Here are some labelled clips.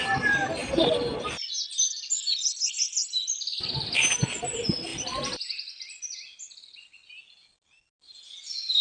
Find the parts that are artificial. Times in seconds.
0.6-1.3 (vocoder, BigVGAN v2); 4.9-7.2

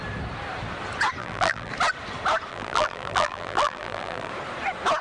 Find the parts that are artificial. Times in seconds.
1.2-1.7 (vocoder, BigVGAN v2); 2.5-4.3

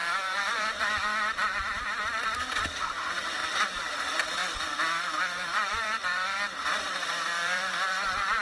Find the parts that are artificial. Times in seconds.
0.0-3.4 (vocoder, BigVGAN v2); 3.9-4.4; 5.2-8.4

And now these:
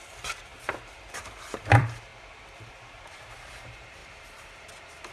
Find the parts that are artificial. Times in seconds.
0.0-2.1 (vocoder, BigVGAN v2); 2.7-4.0

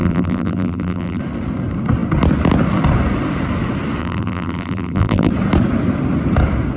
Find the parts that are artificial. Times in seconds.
0.0-1.2 (vocoder, BigVGAN v2); 4.0-5.3